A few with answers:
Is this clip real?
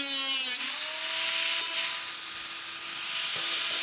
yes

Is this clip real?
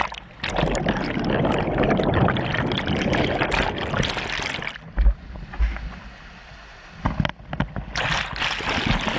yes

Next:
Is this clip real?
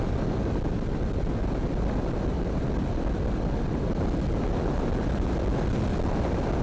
yes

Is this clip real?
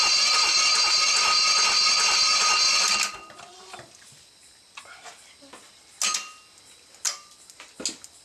yes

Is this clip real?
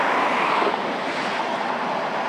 yes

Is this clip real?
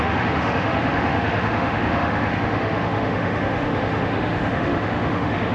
no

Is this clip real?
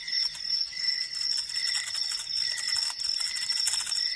yes